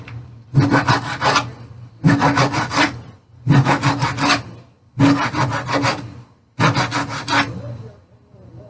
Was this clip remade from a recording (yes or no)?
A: no